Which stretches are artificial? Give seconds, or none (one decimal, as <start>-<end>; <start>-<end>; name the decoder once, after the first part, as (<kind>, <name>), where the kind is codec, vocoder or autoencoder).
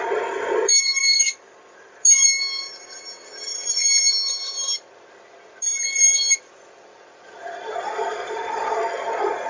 1.0-1.6 (vocoder, BigVGAN v2); 8.0-8.8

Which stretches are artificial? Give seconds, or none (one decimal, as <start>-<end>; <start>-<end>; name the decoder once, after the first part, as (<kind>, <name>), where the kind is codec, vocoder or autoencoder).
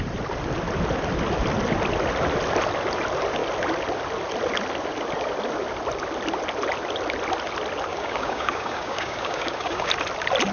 7.9-9.9 (codec, DAC)